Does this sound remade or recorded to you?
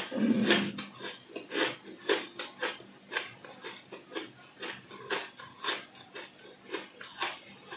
recorded